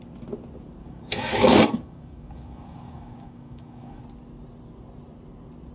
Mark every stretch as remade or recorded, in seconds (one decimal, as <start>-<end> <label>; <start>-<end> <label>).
0.0-0.8 recorded; 0.8-4.0 remade; 4.0-5.7 recorded